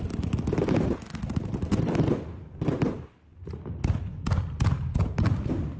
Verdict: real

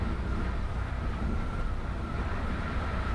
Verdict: real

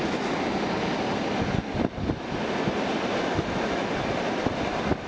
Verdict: fake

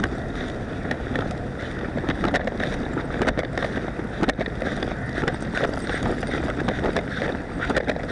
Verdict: real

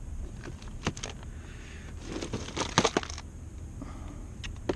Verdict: real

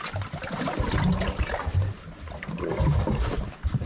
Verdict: real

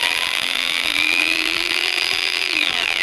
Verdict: fake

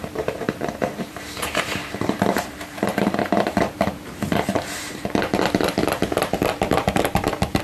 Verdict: fake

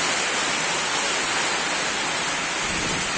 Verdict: real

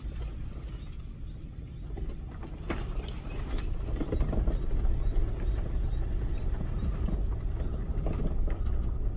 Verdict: real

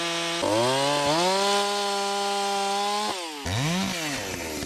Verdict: real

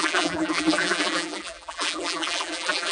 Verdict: fake